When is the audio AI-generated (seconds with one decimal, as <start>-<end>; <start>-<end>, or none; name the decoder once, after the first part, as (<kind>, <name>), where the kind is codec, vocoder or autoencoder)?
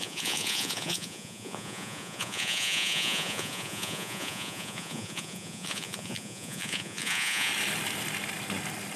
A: 0.0-7.5 (vocoder, Vocos)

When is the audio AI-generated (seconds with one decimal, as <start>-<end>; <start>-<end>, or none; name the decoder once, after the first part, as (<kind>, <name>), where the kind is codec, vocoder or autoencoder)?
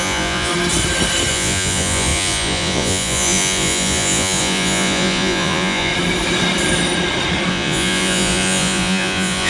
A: 0.0-0.5 (vocoder, Vocos); 1.3-5.9; 7.5-9.5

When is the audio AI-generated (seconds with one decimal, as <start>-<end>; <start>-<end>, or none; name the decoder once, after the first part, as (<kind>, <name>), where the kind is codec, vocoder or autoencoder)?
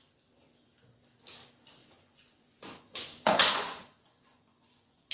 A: 1.8-5.1 (vocoder, Vocos)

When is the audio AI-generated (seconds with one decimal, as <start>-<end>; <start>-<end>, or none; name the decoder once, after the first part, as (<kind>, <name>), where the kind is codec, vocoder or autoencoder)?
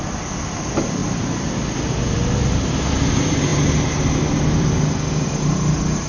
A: none